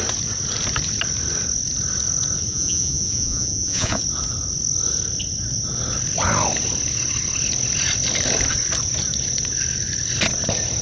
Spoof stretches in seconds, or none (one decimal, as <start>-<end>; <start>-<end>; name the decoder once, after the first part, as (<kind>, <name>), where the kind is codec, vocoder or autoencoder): 2.5-4.0 (vocoder, Vocos)